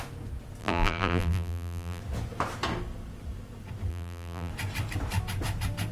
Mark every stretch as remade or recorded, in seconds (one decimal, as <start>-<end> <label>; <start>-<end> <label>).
0.0-0.6 recorded; 0.6-2.0 remade; 2.0-3.9 recorded; 3.9-4.5 remade; 4.5-5.9 recorded